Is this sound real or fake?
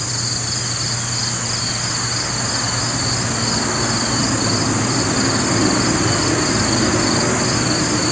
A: real